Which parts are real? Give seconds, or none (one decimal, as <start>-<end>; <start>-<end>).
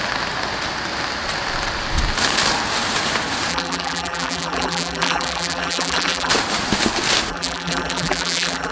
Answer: 0.0-3.5; 6.3-7.3